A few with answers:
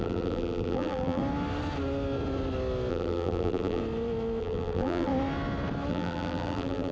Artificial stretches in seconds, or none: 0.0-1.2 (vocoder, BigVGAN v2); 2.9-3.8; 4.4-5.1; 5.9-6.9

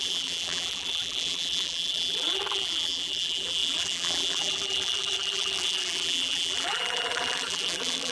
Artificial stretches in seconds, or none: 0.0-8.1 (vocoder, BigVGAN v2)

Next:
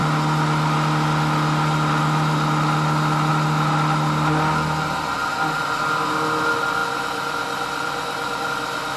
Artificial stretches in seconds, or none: 6.8-8.5 (vocoder, BigVGAN v2)